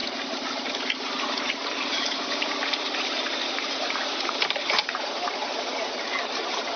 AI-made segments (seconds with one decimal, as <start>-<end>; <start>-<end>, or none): 0.0-6.8